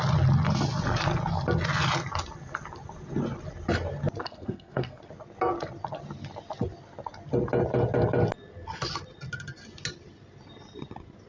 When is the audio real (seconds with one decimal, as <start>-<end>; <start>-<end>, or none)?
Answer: 0.0-4.2; 5.0-11.3